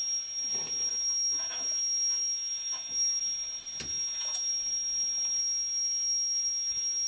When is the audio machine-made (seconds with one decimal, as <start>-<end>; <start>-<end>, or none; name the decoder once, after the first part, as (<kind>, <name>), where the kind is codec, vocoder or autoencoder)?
0.9-3.2 (autoencoder, DAC-VAE); 3.9-4.5; 5.4-7.1